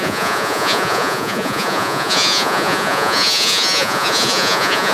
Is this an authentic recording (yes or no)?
no